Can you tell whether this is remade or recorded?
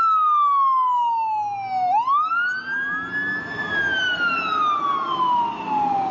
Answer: recorded